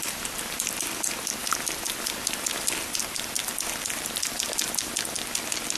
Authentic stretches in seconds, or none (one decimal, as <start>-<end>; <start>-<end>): 0.0-1.4; 4.9-5.8

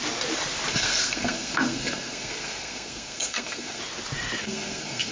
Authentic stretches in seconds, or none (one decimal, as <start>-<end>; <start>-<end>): 0.0-0.7; 3.8-4.4

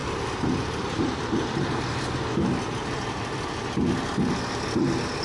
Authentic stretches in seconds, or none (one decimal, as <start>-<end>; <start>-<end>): 1.2-5.2

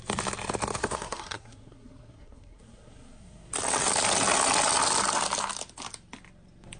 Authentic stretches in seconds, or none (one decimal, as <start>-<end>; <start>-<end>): 0.0-0.8; 3.5-6.8

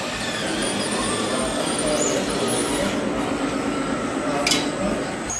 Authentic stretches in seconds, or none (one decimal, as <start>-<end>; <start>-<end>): 0.0-5.4

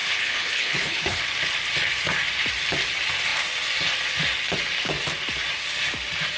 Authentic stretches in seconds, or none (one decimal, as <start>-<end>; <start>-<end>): 1.2-6.4

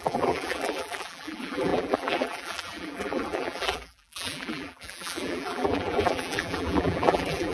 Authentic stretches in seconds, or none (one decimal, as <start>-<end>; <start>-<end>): none

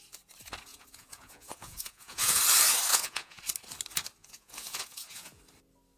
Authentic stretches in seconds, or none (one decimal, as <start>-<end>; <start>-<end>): 0.0-0.7; 2.4-2.9; 3.4-4.2; 5.4-6.0